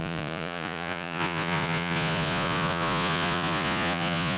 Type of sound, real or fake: fake